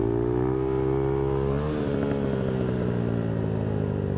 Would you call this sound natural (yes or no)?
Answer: yes